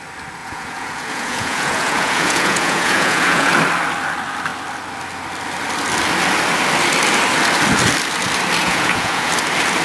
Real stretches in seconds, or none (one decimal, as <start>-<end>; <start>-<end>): 0.0-0.4; 3.5-8.6; 9.3-9.8